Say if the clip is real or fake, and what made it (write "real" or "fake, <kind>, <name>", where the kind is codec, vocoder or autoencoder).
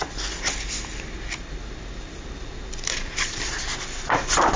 real